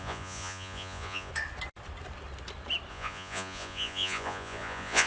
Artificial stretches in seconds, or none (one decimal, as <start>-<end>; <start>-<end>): 0.0-1.3; 2.9-5.1